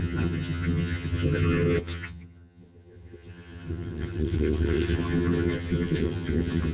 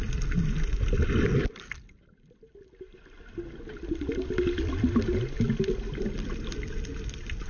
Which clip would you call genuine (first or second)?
second